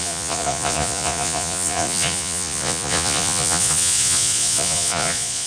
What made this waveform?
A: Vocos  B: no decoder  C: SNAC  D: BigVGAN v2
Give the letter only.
A